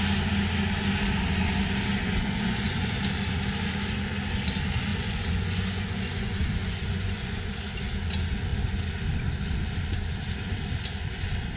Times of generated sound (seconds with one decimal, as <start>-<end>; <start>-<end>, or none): 2.0-2.9; 4.9-7.5